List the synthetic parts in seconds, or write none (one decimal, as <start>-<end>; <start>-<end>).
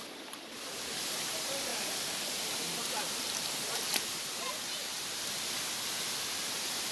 1.7-4.3; 4.8-5.5